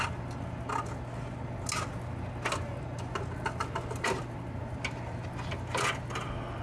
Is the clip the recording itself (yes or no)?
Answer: yes